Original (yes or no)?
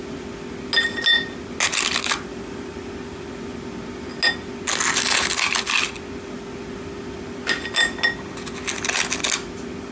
yes